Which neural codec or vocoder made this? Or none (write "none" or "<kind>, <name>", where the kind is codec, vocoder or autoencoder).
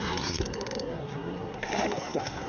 codec, SNAC